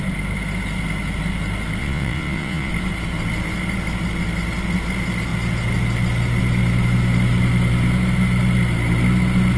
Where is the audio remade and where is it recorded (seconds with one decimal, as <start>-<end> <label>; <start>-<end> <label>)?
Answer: 0.0-1.8 recorded; 1.8-2.7 remade; 2.7-9.6 recorded